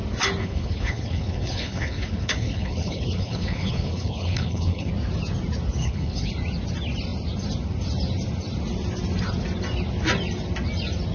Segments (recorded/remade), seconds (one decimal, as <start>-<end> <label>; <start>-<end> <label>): 0.0-0.4 recorded; 0.4-4.9 remade; 4.9-5.8 recorded; 5.8-6.3 remade; 6.3-11.1 recorded